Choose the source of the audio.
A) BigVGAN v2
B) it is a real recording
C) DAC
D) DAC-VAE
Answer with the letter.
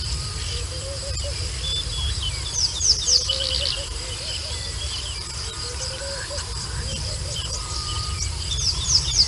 A